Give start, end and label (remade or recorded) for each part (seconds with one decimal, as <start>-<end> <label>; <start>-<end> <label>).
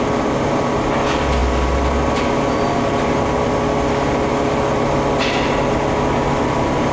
0.0-6.9 recorded